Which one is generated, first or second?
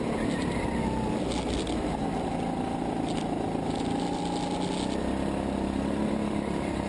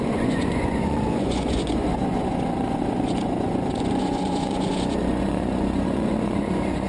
second